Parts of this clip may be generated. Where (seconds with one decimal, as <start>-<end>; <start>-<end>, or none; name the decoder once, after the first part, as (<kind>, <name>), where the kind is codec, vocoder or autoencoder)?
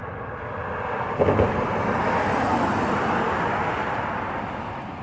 none